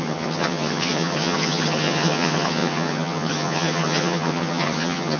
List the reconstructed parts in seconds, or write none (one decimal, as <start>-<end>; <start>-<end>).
0.0-5.2